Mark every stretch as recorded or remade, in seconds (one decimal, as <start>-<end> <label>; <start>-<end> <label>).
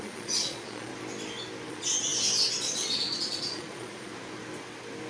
0.0-0.9 remade; 0.9-1.7 recorded; 1.7-2.1 remade; 2.1-2.6 recorded; 2.6-4.1 remade; 4.1-5.1 recorded